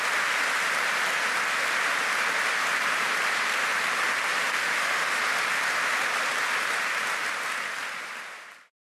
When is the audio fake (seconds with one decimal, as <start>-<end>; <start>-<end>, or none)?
4.6-5.2

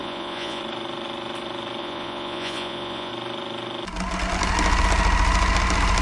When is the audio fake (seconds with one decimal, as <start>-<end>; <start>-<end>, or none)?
0.0-0.6; 1.8-3.1